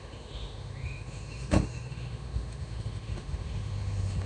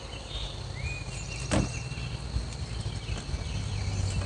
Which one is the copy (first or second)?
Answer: first